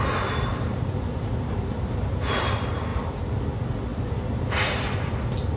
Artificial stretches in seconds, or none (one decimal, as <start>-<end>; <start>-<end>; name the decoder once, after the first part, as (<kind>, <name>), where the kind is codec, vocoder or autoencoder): 0.5-2.1 (vocoder, BigVGAN v2); 2.9-3.4; 3.9-4.7

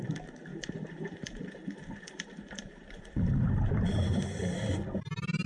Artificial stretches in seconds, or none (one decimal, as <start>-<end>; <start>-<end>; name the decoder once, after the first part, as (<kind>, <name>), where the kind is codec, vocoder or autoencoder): 0.5-3.3 (vocoder, BigVGAN v2)

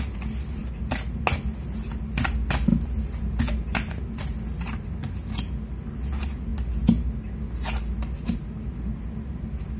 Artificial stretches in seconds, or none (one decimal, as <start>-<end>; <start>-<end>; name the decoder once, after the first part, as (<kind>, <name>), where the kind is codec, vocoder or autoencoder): 0.6-1.2 (vocoder, BigVGAN v2); 2.7-3.4

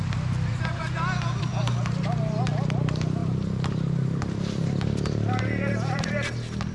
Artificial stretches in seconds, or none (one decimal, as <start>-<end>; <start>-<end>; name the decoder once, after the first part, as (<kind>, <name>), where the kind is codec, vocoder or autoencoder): 3.2-6.1 (vocoder, BigVGAN v2)

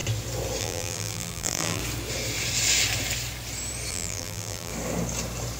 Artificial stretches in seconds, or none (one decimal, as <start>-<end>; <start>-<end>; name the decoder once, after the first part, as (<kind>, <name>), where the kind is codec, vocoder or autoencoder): 0.6-1.8 (vocoder, BigVGAN v2); 3.9-4.7